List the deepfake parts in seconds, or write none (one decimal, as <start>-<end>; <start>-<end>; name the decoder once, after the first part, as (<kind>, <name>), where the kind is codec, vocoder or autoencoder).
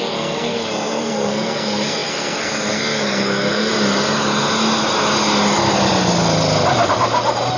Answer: 0.0-3.7 (codec, SNAC)